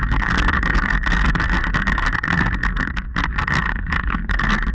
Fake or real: fake